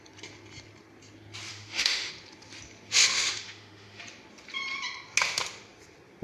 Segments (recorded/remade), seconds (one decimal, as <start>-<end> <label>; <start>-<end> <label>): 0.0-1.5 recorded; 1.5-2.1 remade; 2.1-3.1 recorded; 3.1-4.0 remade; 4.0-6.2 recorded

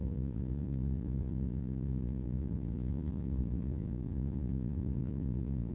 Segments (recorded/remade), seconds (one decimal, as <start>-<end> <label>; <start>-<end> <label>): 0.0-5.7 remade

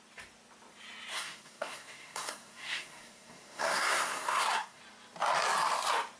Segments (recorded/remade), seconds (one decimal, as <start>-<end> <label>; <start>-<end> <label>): 0.0-1.1 recorded; 1.1-4.8 remade; 4.8-6.2 recorded

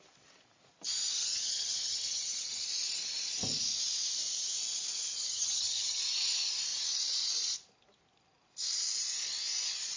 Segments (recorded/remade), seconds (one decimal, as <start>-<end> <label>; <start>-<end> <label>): 0.0-1.2 recorded; 1.2-2.6 remade; 2.6-5.1 recorded; 5.1-6.0 remade; 6.0-10.0 recorded

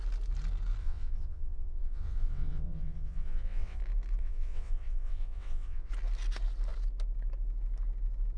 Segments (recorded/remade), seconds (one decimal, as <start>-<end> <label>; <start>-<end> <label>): 0.0-0.8 recorded; 0.8-3.8 remade; 3.8-4.2 recorded; 4.2-5.9 remade; 5.9-8.4 recorded

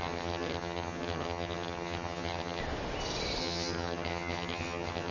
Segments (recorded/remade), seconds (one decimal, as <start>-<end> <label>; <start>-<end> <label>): 0.0-2.6 remade; 2.6-3.4 recorded; 3.4-5.1 remade